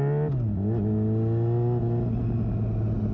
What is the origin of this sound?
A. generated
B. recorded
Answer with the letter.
B